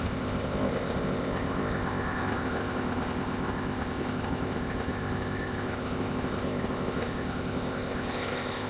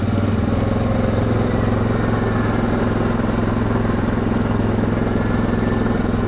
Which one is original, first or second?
second